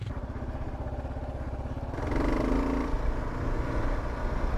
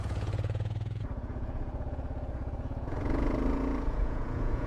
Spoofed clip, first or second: second